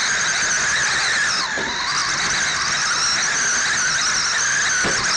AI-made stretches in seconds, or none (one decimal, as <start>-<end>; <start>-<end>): none